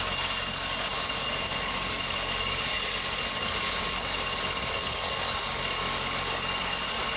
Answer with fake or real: fake